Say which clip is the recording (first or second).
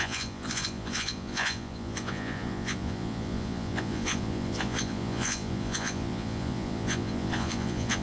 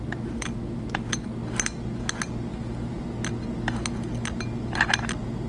second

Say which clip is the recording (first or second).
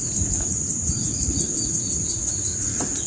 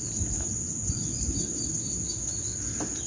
second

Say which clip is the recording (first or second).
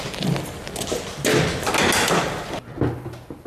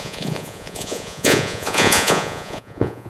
first